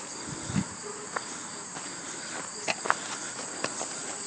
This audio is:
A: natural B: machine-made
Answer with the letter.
A